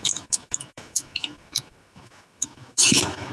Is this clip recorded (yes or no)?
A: no